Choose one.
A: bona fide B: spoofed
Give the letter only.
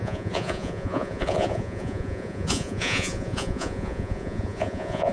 B